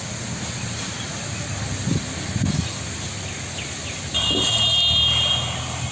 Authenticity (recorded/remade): recorded